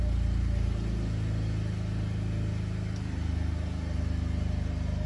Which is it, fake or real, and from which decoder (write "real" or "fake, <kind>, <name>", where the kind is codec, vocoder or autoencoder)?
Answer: real